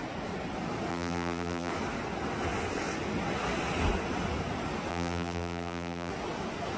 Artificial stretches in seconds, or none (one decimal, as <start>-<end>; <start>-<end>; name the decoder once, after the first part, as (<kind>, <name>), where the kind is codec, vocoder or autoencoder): 0.9-1.7 (vocoder, BigVGAN v2); 4.9-6.1